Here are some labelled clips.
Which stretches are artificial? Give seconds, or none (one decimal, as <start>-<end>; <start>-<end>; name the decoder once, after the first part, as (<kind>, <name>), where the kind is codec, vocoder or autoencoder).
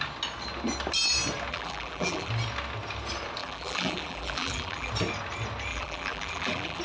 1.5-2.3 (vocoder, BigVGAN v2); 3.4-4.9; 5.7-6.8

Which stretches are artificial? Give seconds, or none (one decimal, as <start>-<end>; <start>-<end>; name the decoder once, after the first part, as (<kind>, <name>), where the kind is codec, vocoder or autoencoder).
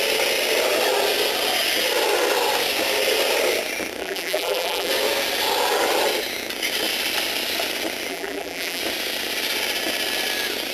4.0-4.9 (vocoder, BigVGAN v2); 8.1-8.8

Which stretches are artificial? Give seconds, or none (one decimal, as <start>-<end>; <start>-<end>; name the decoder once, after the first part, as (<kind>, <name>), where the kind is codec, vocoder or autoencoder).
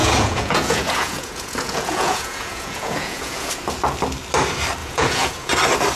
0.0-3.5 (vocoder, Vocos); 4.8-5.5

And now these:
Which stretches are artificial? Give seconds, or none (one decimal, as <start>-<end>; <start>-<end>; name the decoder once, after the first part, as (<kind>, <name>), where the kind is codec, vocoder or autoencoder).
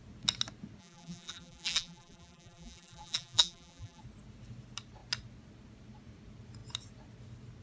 0.8-4.0 (vocoder, BigVGAN v2)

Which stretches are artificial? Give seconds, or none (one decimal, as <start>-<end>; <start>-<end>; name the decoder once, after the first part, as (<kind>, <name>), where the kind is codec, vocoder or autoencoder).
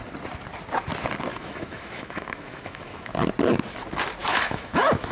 1.3-3.1 (autoencoder, DAC-VAE); 4.2-5.1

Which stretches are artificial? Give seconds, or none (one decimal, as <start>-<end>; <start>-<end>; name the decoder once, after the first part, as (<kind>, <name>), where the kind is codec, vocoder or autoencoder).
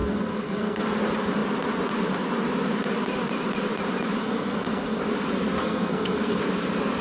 0.0-0.8 (codec, SNAC); 4.2-5.0; 5.6-6.4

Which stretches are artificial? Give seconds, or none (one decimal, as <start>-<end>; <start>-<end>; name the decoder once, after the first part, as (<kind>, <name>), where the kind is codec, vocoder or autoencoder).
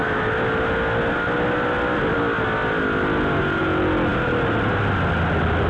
none